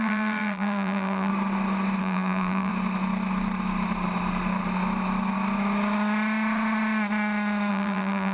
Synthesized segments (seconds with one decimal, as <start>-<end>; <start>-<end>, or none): 0.0-1.3; 2.0-2.7; 7.7-8.3

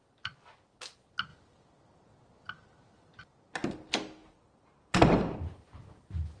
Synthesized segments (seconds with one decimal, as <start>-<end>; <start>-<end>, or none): 4.2-5.6

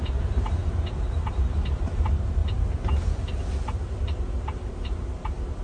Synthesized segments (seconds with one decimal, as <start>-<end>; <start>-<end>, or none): 0.0-2.4; 4.7-5.6

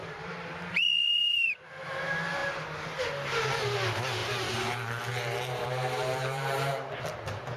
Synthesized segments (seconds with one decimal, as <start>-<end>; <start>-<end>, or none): 0.0-1.8; 4.2-6.7

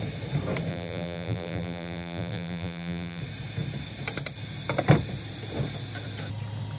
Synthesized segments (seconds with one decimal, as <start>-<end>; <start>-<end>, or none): 0.7-3.2